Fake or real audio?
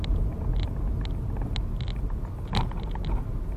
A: real